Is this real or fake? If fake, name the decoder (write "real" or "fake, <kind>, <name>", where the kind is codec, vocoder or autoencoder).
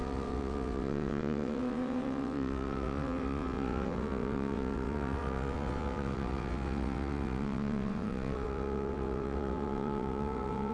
fake, vocoder, WaveNeXt